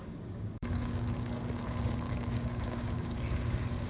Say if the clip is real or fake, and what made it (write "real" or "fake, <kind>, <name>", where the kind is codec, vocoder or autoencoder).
fake, codec, DAC